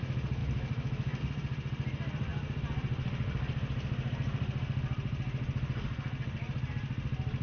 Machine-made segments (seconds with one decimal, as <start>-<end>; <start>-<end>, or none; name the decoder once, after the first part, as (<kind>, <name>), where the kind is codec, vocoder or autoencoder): 0.4-1.2 (autoencoder, DAC-VAE)